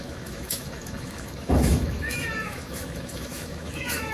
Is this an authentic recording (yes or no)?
no